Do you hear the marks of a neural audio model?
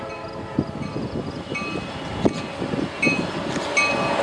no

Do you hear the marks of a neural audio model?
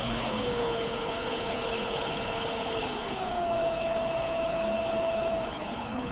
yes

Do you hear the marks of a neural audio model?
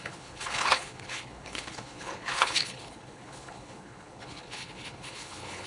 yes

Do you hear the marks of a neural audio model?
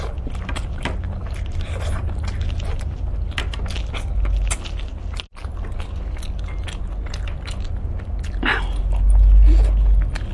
no